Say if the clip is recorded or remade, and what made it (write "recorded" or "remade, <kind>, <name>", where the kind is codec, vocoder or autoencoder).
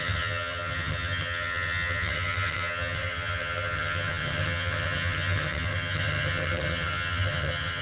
remade, vocoder, HiFi-GAN